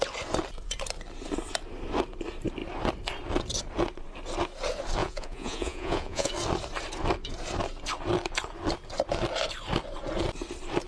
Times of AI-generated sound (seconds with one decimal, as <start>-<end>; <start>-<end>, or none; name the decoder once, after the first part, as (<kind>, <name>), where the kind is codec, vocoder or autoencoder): 5.0-6.3 (vocoder, Vocos)